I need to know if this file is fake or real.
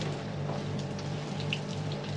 fake